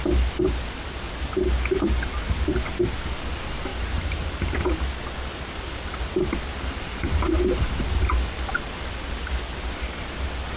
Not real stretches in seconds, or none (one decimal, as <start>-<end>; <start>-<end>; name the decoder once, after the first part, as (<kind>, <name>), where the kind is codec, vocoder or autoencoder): none